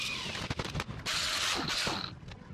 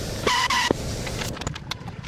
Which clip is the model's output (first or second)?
second